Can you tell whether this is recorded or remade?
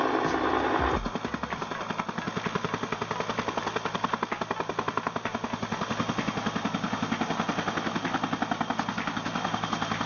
recorded